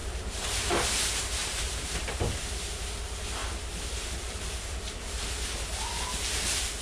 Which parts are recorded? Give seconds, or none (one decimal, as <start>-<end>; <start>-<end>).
0.7-1.4; 2.8-3.4; 5.3-6.8